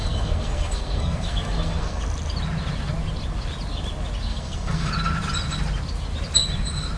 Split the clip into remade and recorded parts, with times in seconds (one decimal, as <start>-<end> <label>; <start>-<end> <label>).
0.0-2.0 remade; 2.0-4.3 recorded; 4.3-4.9 remade; 4.9-7.0 recorded